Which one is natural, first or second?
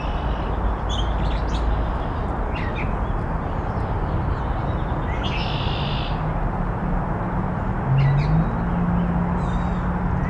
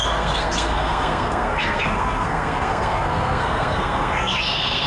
first